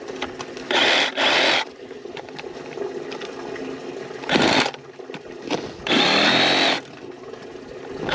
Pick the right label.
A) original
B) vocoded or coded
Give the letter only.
A